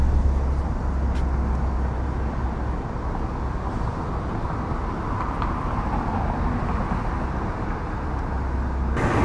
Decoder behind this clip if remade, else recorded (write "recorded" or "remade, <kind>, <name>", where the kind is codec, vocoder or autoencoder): recorded